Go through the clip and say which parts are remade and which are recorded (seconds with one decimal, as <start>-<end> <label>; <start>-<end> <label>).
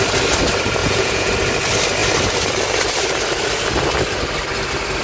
0.0-0.8 recorded; 0.8-1.3 remade; 1.3-5.0 recorded